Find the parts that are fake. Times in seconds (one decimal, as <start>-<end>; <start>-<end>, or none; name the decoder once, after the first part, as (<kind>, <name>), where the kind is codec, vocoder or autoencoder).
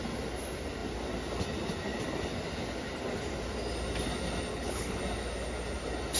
4.5-5.0 (codec, HILCodec)